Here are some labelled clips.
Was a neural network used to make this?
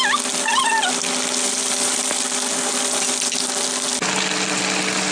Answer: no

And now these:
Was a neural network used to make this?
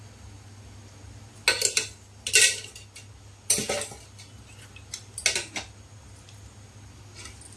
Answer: no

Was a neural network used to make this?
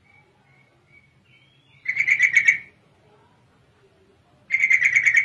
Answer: no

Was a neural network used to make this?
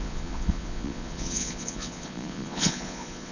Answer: yes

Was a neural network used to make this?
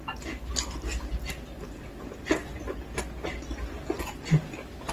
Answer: no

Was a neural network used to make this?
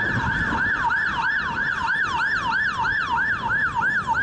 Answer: no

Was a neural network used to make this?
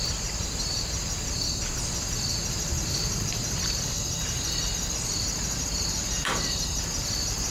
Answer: yes